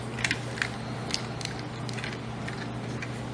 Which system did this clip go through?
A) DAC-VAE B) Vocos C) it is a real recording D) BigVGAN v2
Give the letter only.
C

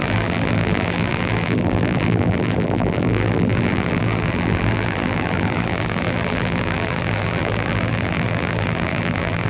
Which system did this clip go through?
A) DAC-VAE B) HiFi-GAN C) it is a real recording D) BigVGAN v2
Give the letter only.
D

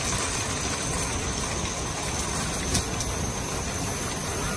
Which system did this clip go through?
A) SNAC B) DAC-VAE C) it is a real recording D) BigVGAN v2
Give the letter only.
C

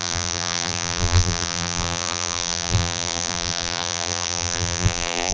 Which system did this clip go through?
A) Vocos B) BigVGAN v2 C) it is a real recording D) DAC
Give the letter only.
B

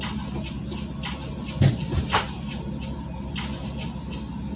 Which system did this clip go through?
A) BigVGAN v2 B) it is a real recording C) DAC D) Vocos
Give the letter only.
B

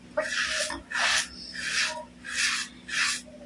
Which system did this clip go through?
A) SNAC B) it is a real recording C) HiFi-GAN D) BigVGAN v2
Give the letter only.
B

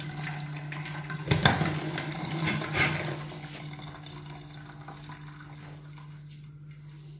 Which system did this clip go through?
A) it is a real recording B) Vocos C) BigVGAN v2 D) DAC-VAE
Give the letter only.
A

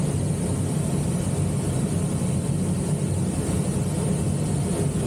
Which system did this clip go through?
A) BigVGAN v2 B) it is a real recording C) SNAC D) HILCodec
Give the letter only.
B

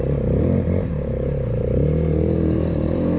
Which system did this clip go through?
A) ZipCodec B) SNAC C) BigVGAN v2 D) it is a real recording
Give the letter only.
C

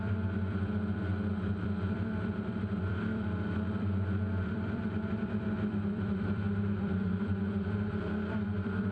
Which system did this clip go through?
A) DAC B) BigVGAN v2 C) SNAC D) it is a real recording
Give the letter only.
B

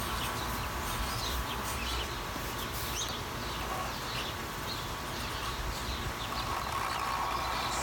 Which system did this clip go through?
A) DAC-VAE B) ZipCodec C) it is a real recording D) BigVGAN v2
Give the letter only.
C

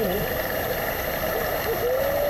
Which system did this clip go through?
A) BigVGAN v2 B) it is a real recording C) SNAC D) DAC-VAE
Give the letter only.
B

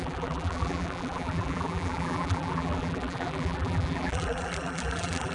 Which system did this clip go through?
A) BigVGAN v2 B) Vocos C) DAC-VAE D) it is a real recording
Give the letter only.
A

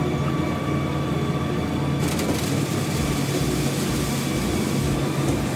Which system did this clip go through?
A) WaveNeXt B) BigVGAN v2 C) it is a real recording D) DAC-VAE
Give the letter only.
C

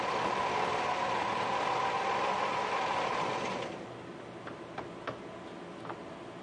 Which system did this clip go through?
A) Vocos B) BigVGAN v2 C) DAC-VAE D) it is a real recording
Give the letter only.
D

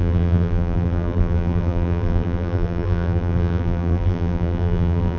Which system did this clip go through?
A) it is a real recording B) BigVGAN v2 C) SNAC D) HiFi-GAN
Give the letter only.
B